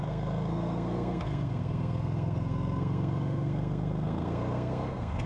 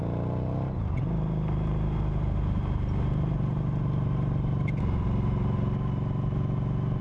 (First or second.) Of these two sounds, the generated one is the first